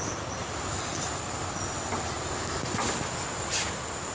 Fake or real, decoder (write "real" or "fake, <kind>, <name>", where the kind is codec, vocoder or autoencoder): real